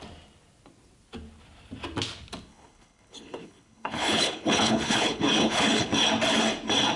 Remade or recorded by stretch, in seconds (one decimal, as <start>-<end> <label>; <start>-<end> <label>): 0.0-2.5 recorded; 2.5-5.9 remade; 5.9-7.0 recorded